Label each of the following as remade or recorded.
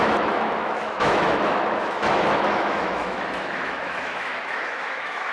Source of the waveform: remade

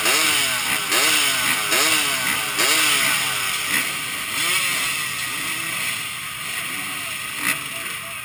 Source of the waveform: recorded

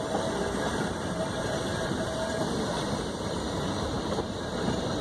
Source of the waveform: remade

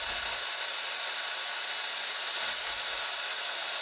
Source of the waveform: recorded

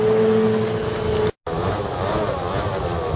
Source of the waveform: recorded